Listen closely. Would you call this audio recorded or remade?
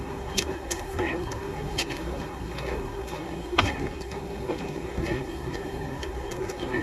remade